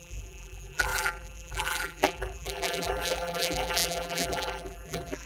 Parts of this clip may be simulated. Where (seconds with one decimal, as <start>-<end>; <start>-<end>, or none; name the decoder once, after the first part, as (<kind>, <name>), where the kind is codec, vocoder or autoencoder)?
0.0-5.3 (vocoder, BigVGAN v2)